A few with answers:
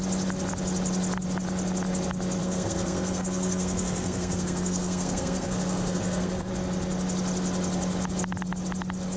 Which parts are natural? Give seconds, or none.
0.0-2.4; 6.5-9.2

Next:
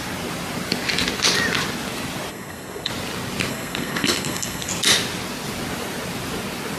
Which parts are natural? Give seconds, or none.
0.0-2.3; 2.9-3.5; 4.7-6.8